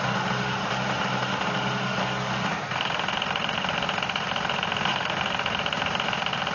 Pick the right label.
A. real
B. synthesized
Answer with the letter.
A